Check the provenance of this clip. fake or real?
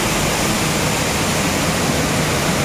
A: real